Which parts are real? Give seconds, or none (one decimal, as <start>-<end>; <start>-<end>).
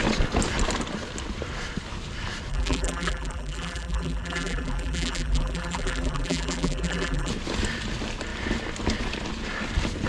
0.0-2.5; 7.3-10.1